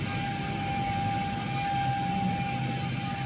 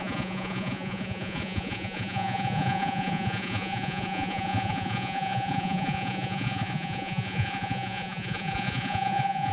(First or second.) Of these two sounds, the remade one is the second